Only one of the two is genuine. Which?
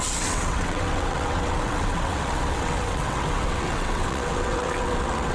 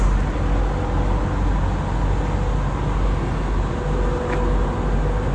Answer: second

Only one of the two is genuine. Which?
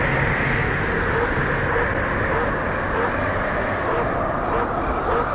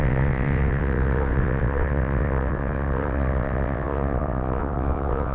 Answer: first